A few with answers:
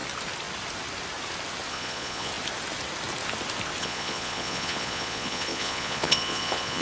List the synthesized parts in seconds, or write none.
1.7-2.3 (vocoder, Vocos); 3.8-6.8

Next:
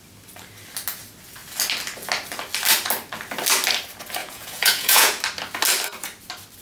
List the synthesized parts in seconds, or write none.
4.2-5.2 (vocoder, Vocos)

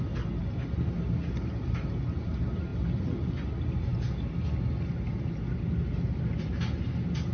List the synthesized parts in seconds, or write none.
none

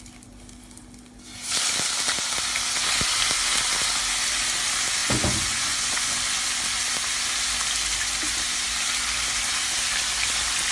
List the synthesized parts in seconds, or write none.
5.0-6.2 (vocoder, Vocos)

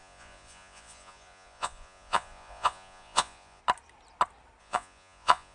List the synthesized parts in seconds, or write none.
0.0-3.6 (vocoder, Vocos); 4.6-5.5

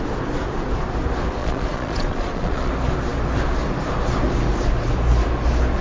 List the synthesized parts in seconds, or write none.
1.4-2.7 (vocoder, Vocos)

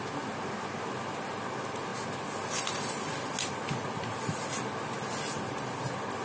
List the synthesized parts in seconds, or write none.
none